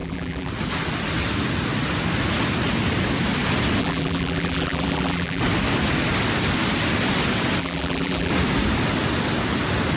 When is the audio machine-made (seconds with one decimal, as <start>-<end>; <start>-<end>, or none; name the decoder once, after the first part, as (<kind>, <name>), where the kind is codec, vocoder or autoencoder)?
0.0-0.5 (vocoder, BigVGAN v2); 3.8-5.4; 7.6-8.3